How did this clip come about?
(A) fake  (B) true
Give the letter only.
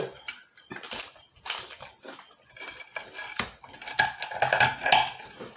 B